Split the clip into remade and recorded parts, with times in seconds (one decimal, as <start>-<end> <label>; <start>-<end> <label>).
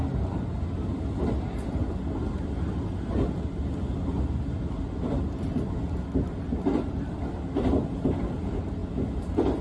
0.0-9.6 recorded